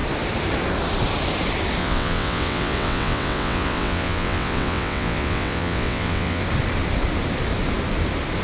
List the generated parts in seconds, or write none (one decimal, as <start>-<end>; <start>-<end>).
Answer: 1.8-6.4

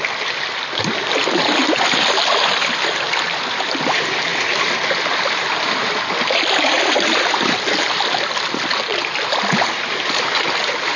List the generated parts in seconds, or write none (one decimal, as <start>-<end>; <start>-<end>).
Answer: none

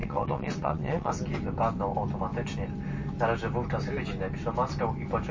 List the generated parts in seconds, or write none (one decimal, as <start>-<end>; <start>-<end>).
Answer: 0.0-1.1